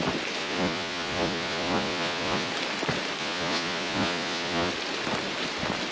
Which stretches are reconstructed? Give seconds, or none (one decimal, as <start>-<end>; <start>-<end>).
0.4-2.5; 3.2-4.7